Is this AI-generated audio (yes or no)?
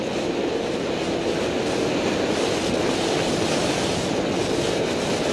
no